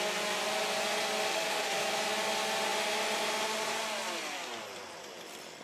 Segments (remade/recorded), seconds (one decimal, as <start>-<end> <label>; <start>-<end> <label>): 0.0-1.3 recorded; 1.3-1.8 remade; 1.8-5.6 recorded